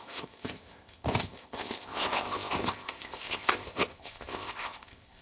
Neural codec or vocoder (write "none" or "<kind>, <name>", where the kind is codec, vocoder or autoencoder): codec, ZipCodec